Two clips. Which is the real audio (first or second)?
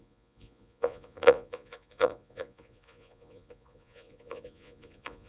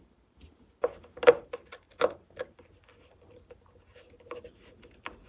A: second